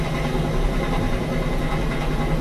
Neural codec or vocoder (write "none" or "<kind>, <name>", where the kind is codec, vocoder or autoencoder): none